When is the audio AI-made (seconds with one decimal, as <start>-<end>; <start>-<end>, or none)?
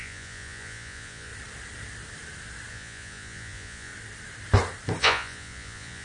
0.0-1.3; 2.7-3.9; 5.0-6.0